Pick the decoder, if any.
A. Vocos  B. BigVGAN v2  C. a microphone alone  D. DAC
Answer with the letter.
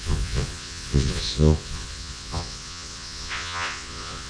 A